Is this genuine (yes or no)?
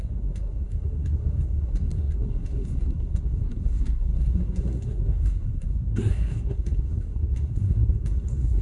no